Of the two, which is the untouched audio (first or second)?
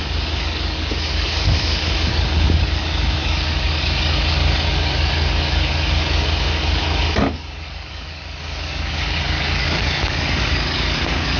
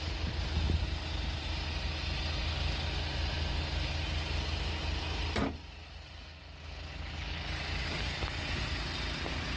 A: second